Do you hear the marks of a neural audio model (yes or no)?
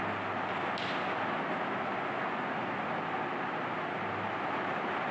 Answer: no